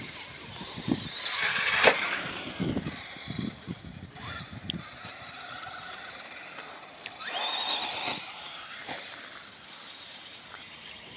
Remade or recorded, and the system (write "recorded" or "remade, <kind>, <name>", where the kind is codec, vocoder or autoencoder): remade, vocoder, BigVGAN v2